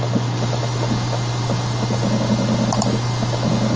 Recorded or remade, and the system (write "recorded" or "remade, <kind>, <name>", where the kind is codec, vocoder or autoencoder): recorded